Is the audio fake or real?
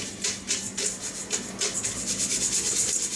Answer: real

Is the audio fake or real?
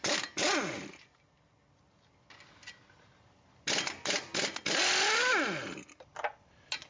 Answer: real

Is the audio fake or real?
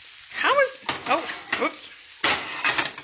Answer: real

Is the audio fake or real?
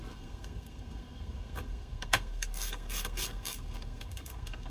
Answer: fake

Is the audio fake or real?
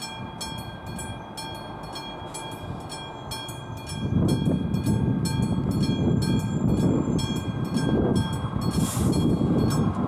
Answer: real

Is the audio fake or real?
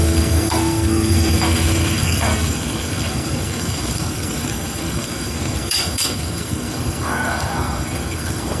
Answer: fake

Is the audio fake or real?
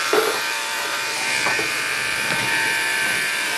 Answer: fake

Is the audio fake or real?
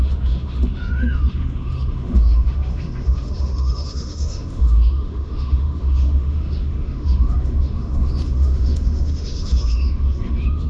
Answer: fake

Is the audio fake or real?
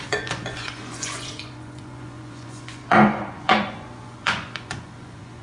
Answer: fake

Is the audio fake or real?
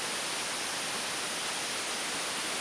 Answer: real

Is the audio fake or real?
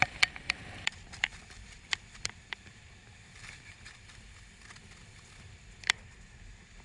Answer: fake